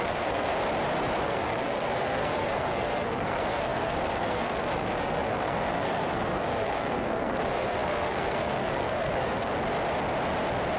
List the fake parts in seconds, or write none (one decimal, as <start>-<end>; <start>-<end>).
0.0-0.5; 1.2-9.5